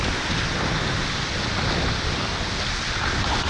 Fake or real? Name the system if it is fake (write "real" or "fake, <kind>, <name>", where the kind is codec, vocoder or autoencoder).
real